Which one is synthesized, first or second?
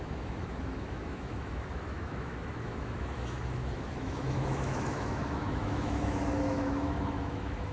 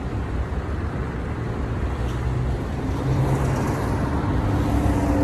first